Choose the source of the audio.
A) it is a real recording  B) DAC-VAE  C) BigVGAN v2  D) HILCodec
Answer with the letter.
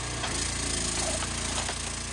A